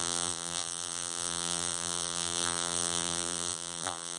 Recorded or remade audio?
remade